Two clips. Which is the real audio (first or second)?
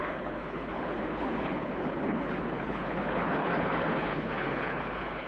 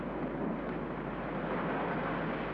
second